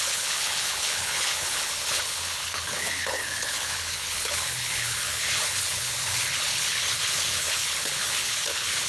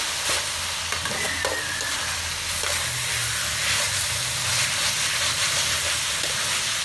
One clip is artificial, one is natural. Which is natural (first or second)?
second